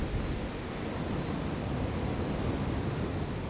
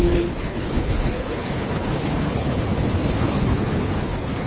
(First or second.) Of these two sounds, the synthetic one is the second